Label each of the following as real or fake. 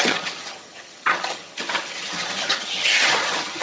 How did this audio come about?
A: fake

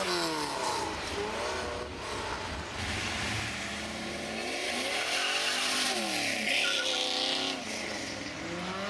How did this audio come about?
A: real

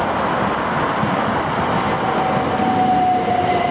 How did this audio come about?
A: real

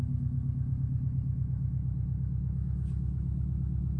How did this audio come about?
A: real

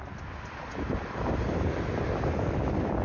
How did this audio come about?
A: real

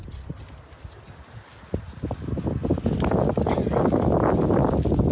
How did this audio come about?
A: real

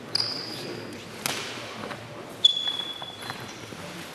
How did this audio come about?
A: real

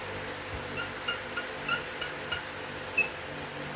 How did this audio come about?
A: real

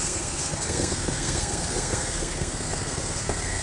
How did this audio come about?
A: fake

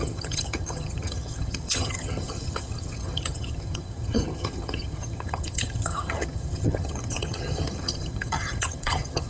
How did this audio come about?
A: fake